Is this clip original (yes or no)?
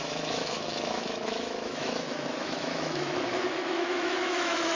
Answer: no